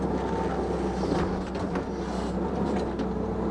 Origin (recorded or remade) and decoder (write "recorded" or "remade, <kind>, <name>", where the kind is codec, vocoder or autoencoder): recorded